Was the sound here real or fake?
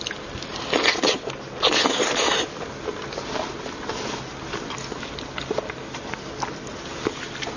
real